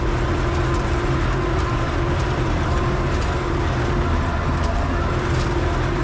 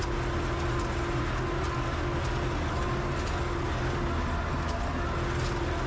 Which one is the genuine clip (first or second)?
second